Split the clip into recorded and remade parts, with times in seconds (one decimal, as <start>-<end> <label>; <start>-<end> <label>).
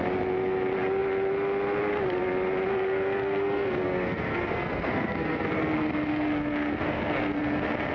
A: 0.0-2.7 recorded; 2.7-7.4 remade; 7.4-7.9 recorded